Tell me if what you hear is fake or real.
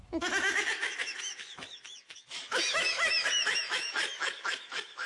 fake